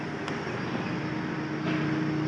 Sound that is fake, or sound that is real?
real